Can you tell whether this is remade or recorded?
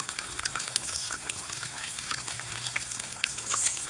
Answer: remade